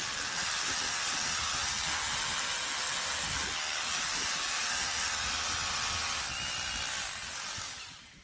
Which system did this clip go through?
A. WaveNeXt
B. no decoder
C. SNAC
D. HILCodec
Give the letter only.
B